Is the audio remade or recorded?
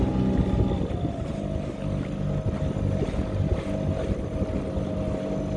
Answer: recorded